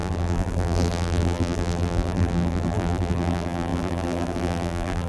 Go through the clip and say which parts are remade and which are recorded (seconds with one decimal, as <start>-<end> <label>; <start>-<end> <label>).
0.0-5.1 remade